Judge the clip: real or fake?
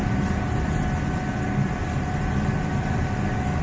real